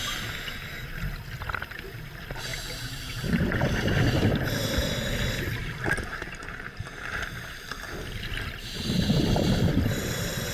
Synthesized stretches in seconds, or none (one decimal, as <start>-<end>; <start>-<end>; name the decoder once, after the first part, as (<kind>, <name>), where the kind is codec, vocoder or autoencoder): 2.5-3.9 (vocoder, BigVGAN v2); 5.6-7.7